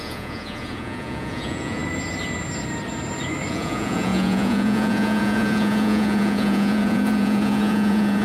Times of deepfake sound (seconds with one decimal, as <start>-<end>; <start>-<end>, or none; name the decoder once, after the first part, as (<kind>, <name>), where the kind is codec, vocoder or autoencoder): 0.0-1.8 (vocoder, Vocos); 3.5-8.2